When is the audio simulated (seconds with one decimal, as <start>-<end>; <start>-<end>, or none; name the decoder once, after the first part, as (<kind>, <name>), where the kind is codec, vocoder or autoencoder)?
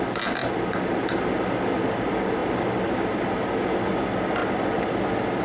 none